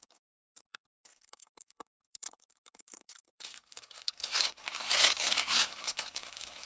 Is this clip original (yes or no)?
no